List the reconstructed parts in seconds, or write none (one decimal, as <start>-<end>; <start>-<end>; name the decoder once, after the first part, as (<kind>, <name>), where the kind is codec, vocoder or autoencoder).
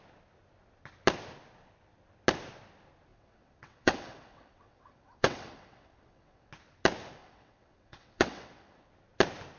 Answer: 3.1-6.5 (vocoder, WaveNeXt); 7.2-8.9